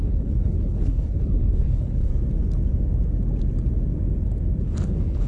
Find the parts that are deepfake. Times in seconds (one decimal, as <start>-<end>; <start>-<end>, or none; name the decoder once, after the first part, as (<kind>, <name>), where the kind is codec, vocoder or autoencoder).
0.0-2.1 (codec, HILCodec); 4.6-5.3